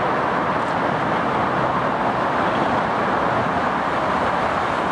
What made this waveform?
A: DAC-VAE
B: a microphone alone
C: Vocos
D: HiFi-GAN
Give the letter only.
B